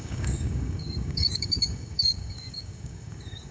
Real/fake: fake